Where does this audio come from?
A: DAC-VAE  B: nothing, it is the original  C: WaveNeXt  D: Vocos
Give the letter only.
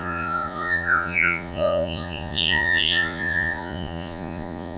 D